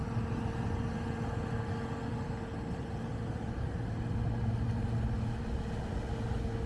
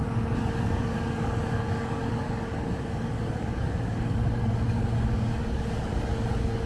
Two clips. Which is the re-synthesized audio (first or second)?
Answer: second